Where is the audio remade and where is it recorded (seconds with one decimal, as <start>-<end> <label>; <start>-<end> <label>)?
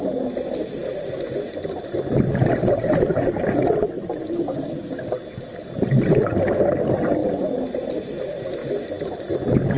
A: 0.0-4.2 recorded; 4.2-5.1 remade; 5.1-9.8 recorded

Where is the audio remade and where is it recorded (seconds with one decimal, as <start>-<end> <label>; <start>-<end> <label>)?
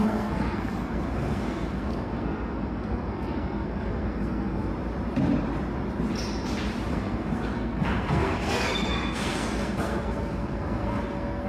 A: 0.0-4.7 remade; 4.7-6.9 recorded; 6.9-11.5 remade